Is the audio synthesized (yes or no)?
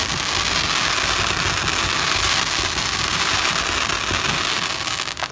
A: no